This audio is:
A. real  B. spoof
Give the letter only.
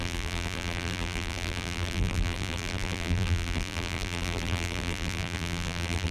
B